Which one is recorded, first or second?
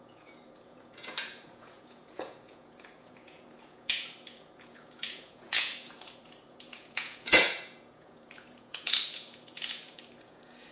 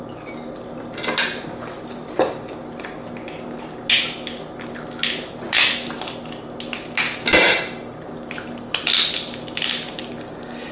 second